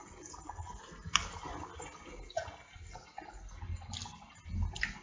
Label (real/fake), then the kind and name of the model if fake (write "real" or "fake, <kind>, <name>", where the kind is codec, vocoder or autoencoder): real